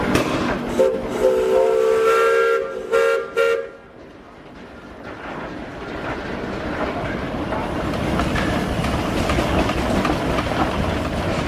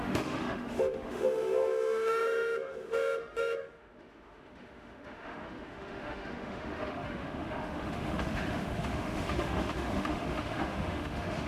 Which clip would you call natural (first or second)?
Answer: first